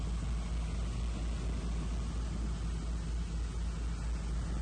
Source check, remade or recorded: recorded